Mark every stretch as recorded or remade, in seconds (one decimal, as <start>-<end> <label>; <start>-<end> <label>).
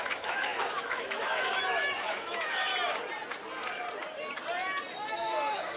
0.0-2.7 remade; 2.7-5.1 recorded; 5.1-5.8 remade